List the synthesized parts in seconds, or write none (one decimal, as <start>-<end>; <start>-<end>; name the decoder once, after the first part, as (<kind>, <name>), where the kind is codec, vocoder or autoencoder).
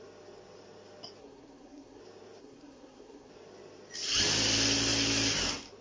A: 1.2-2.0 (codec, SNAC); 2.4-3.3